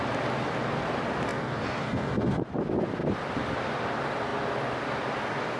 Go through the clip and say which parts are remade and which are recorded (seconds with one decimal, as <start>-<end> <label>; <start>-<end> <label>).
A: 0.0-3.0 recorded; 3.0-3.8 remade; 3.8-5.6 recorded